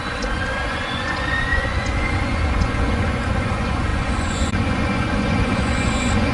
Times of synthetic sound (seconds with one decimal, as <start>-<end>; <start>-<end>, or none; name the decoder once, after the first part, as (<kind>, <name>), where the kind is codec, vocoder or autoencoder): 0.0-6.3 (vocoder, Vocos)

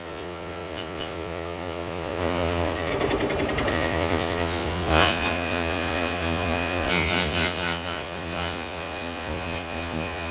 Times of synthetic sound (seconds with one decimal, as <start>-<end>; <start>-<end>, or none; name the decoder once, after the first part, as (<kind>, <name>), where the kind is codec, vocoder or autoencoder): 0.0-2.9 (vocoder, Vocos); 3.7-10.3

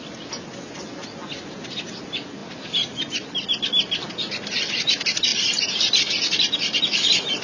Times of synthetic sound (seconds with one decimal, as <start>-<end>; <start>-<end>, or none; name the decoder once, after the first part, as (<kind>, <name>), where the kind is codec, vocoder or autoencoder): none

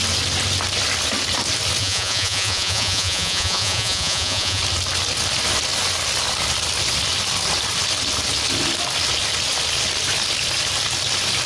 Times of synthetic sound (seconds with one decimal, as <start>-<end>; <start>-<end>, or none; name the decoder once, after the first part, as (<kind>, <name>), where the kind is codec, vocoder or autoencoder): 1.8-4.6 (vocoder, Vocos)

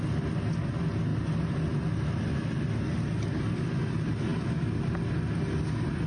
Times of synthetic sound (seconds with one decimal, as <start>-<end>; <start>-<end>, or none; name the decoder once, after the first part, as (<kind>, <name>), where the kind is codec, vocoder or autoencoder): none

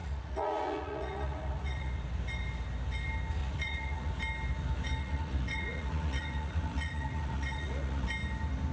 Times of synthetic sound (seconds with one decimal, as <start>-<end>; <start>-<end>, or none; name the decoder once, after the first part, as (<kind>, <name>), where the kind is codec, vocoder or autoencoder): 0.0-1.9 (vocoder, Vocos); 3.4-4.1; 5.0-8.1

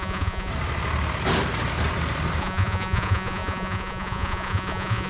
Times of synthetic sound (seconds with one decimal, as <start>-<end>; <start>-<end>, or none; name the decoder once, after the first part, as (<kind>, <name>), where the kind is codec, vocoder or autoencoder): 0.0-0.5 (vocoder, Vocos); 2.4-5.1

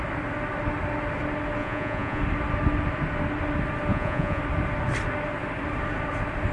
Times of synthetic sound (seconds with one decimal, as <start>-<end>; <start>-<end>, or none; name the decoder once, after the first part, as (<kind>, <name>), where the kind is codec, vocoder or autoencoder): 1.6-2.2 (vocoder, Vocos); 3.9-4.4